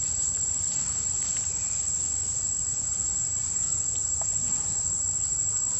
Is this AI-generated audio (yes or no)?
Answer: no